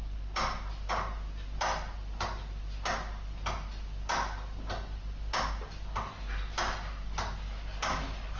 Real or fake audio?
real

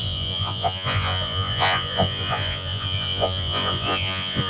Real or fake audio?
fake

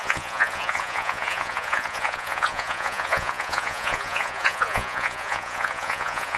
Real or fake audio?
fake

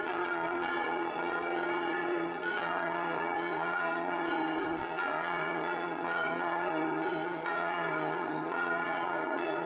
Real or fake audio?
fake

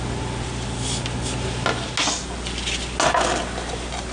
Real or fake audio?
real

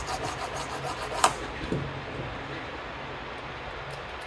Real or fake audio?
real